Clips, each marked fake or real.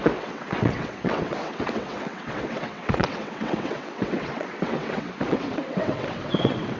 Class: fake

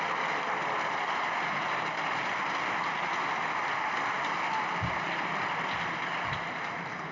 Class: real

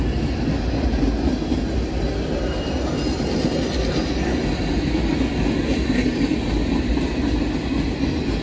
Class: real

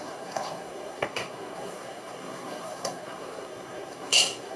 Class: fake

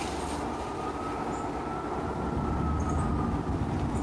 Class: real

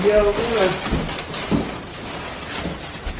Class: real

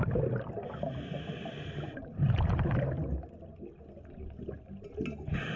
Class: real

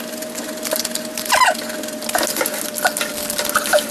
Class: real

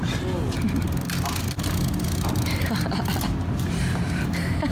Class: real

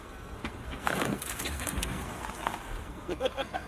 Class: fake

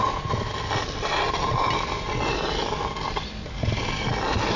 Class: real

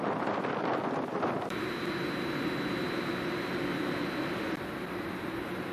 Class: real